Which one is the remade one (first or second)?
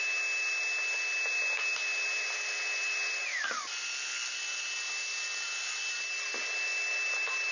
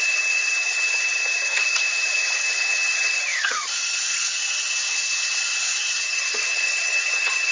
second